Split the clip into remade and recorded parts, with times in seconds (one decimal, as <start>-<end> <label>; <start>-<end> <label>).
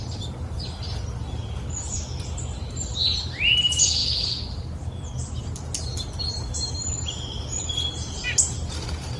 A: 0.0-9.2 recorded